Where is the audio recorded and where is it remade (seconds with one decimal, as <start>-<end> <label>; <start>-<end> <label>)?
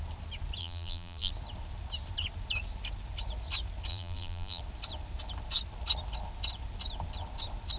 0.0-0.6 recorded; 0.6-1.3 remade; 1.3-3.9 recorded; 3.9-4.6 remade; 4.6-7.8 recorded